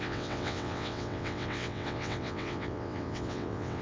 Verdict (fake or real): fake